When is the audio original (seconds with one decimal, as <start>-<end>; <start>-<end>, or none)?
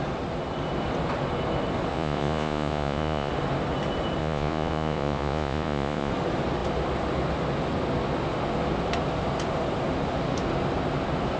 0.0-1.9; 3.3-4.2; 6.1-11.4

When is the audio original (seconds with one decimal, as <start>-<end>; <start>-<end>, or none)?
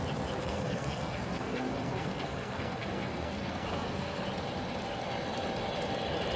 0.0-0.4; 4.2-6.4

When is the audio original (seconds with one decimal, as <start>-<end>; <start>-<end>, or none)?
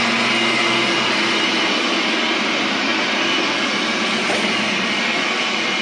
0.0-5.8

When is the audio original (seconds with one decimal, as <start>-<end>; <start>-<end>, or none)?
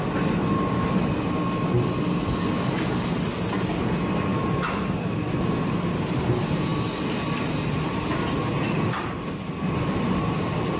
0.0-4.3; 5.7-10.8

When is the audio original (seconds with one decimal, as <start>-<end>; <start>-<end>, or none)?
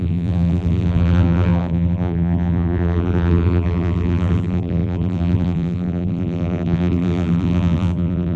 none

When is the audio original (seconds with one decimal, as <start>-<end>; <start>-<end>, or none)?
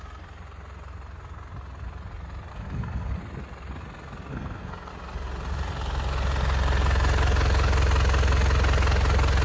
0.0-2.5; 3.2-4.3; 4.9-9.4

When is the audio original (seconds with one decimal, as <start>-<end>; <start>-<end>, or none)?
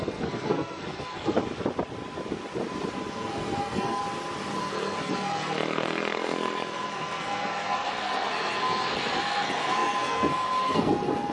1.4-3.1; 4.0-4.6